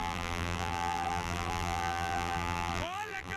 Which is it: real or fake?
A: fake